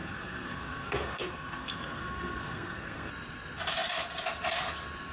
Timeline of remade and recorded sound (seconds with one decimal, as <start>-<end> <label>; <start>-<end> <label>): 0.0-3.1 remade; 3.1-5.1 recorded